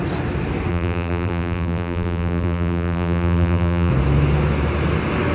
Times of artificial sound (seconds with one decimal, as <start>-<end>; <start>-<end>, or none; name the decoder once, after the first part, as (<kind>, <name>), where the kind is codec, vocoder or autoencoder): 0.7-3.9 (vocoder, BigVGAN v2)